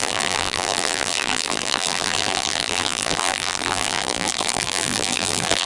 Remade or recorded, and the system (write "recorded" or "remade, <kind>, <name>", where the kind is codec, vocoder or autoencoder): remade, vocoder, BigVGAN v2